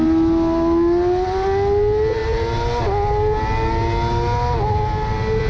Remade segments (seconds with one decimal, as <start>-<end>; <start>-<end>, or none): none